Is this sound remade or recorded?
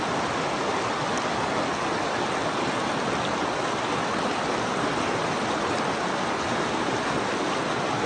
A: recorded